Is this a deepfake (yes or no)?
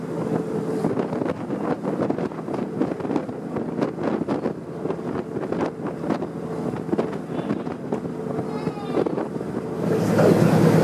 no